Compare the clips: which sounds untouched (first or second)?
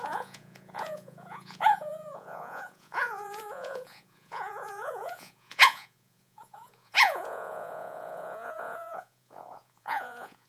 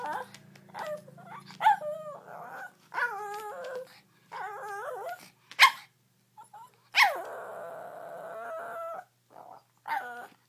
second